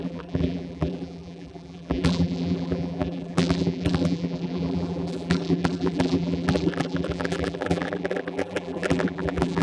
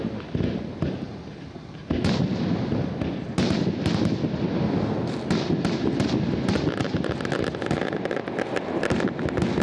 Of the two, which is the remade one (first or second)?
first